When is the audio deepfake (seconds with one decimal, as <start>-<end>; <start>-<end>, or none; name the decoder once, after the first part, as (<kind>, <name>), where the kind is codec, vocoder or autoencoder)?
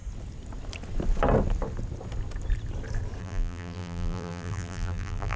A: 3.2-5.4 (vocoder, BigVGAN v2)